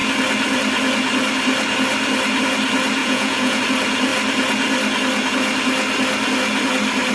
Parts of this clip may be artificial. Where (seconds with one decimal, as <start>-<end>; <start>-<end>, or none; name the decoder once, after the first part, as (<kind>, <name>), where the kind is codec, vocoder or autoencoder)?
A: 3.0-3.6 (vocoder, Vocos)